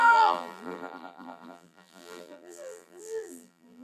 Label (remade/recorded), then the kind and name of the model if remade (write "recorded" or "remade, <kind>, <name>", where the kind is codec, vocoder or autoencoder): remade, vocoder, BigVGAN v2